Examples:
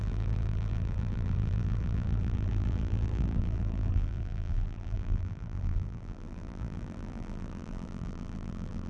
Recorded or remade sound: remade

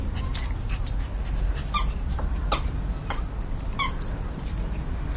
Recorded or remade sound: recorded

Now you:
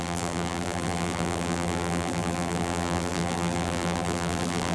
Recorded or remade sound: remade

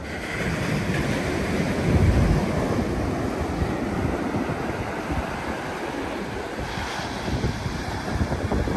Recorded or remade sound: recorded